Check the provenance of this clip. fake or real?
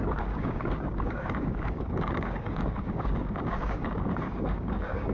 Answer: fake